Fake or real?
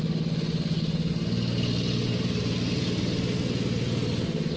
real